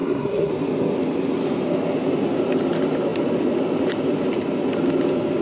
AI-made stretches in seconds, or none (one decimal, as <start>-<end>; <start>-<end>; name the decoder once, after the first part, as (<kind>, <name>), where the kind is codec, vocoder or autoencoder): 0.0-0.5 (codec, SNAC)